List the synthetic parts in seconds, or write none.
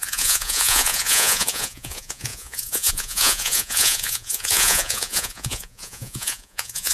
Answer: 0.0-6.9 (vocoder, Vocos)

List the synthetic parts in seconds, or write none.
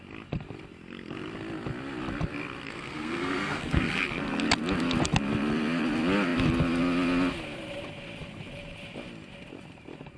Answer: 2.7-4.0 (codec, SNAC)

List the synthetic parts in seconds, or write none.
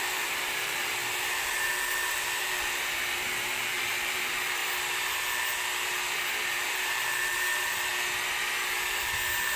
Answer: 0.0-4.6 (vocoder, BigVGAN v2); 6.5-7.9